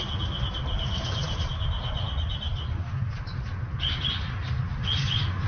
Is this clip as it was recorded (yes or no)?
yes